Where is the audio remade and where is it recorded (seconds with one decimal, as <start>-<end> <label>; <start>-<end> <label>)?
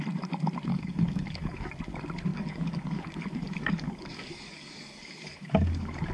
0.0-0.7 recorded; 0.7-1.7 remade; 1.7-2.3 recorded; 2.3-6.1 remade